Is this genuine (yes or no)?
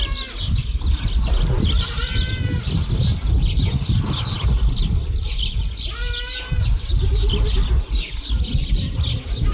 yes